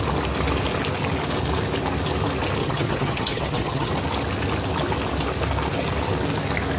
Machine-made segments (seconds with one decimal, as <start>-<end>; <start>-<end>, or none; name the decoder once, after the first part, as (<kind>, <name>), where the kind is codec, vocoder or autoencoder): 2.6-3.9 (vocoder, HiFi-GAN)